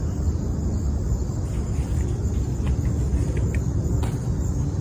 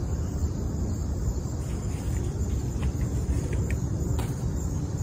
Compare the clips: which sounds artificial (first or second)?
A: second